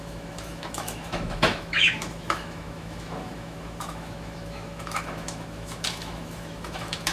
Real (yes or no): no